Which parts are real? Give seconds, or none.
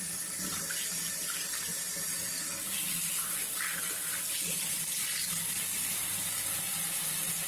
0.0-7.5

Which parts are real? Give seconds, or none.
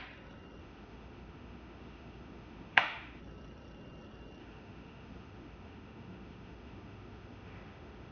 0.0-0.6; 3.2-4.4